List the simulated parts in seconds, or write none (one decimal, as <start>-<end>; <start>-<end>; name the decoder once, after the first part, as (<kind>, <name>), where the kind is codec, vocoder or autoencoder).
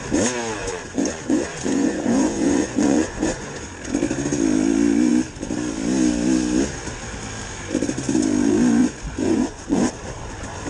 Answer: 0.6-3.6 (vocoder, Vocos); 8.8-9.9